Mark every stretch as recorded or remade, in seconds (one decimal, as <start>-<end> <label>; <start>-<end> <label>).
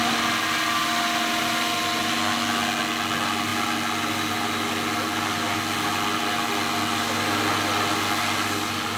0.0-9.0 recorded